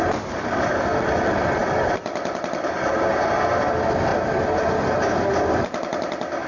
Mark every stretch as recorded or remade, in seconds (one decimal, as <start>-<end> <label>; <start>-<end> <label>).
0.0-6.5 recorded